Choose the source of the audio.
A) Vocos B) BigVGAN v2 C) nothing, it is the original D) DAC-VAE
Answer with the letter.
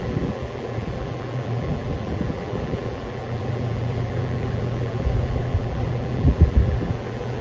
B